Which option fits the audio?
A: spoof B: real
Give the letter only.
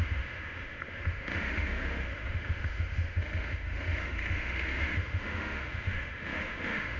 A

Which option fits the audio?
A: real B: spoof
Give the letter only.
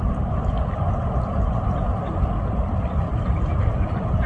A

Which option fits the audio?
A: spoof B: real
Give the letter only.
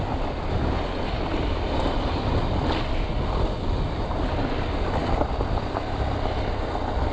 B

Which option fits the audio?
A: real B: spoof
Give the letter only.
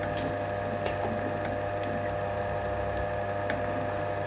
A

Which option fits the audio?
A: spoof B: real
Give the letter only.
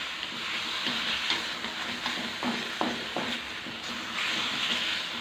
B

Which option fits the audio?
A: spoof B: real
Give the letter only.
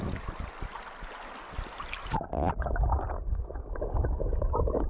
B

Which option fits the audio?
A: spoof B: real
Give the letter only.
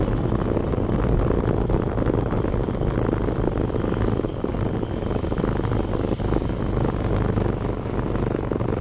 B